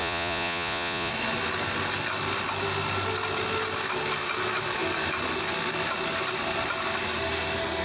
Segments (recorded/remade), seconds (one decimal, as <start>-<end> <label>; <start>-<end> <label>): 0.0-1.1 remade; 1.1-7.8 recorded

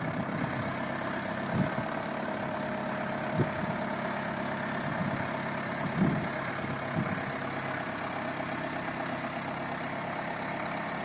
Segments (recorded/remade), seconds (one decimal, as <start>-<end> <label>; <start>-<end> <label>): 0.0-11.0 recorded